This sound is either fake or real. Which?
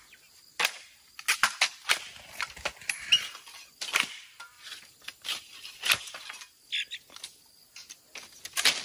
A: real